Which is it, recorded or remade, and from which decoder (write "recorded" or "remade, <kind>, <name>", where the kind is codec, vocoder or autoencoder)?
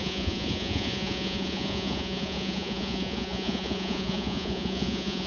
remade, vocoder, Vocos